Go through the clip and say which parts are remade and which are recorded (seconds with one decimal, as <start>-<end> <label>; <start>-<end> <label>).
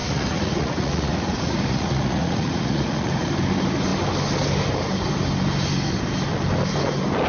0.0-3.3 remade; 3.3-7.3 recorded